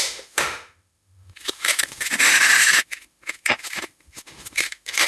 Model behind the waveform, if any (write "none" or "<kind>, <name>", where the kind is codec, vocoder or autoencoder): autoencoder, DAC-VAE